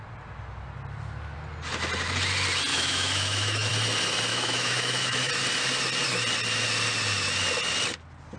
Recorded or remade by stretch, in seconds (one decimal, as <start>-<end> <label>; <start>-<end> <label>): 0.0-2.7 recorded; 2.7-3.7 remade; 3.7-4.3 recorded; 4.3-5.3 remade; 5.3-8.4 recorded